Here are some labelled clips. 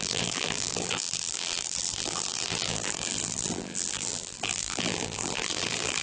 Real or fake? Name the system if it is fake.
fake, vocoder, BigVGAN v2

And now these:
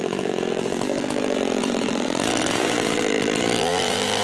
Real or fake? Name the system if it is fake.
fake, vocoder, BigVGAN v2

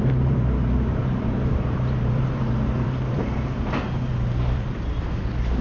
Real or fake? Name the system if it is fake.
fake, vocoder, BigVGAN v2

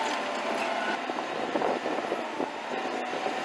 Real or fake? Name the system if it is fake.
real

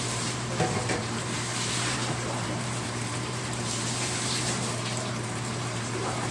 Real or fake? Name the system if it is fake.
fake, vocoder, BigVGAN v2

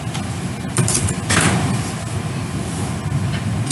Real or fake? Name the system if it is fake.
real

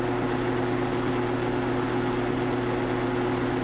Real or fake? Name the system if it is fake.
real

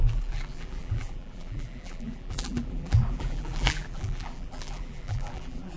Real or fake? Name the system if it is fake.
fake, vocoder, BigVGAN v2